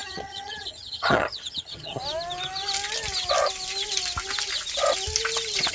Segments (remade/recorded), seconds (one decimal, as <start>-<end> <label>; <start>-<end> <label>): 0.0-2.0 remade; 2.0-5.7 recorded